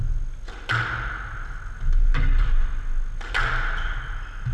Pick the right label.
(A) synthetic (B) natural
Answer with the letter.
B